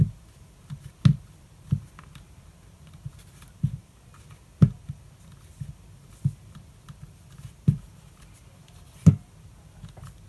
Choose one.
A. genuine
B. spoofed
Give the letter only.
A